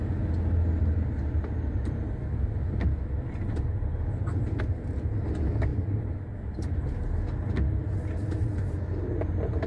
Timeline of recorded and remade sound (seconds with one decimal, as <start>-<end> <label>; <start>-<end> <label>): 0.0-9.7 recorded